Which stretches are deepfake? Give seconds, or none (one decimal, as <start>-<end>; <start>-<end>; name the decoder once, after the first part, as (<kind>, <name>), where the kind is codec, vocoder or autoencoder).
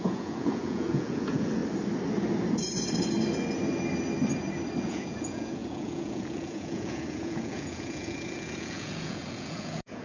0.0-1.6 (vocoder, Vocos); 4.8-10.0